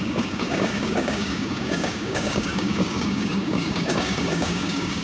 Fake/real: fake